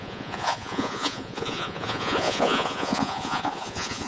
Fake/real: fake